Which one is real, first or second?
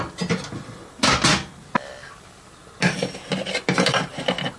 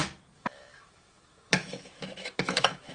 first